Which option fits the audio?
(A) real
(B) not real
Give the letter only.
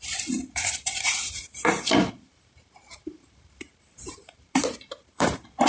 B